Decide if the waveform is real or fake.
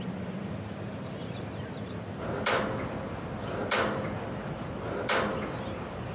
real